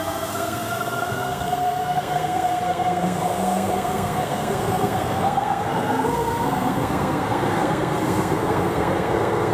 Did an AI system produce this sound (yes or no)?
yes